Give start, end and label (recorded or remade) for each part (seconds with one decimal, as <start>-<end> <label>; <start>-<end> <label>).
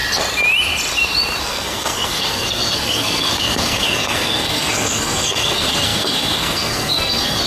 0.0-1.4 recorded; 1.4-7.5 remade